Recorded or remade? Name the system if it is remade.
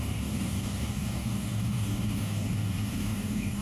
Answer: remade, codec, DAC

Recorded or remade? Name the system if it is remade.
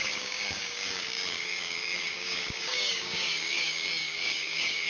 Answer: remade, codec, DAC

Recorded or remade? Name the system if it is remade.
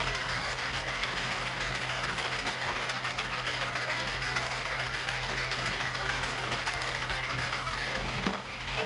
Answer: remade, codec, DAC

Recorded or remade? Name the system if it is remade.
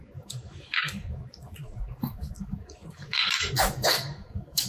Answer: remade, codec, DAC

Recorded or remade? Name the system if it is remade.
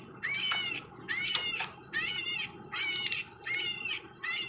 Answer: recorded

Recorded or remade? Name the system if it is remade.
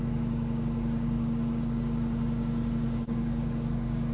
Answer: remade, codec, DAC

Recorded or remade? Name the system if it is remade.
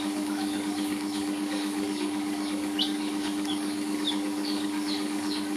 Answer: remade, codec, DAC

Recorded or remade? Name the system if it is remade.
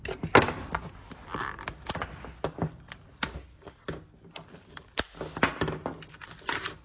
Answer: recorded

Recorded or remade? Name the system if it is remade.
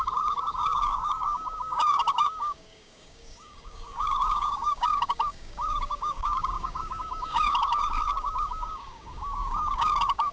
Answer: remade, codec, DAC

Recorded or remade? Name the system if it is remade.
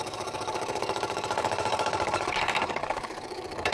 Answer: remade, codec, DAC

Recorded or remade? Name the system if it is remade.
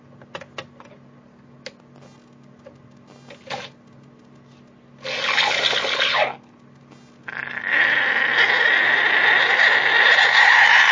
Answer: recorded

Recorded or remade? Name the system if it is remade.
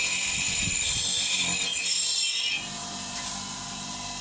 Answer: recorded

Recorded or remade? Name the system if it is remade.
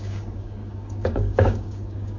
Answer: remade, codec, DAC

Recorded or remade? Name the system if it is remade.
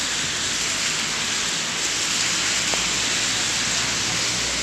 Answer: recorded